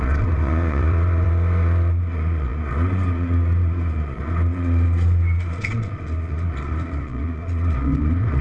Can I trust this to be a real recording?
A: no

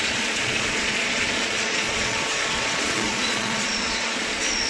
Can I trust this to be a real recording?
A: no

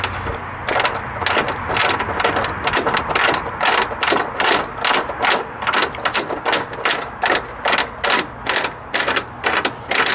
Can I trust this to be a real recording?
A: yes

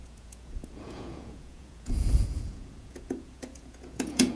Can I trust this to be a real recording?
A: no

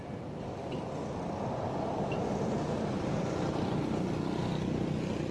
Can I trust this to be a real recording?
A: yes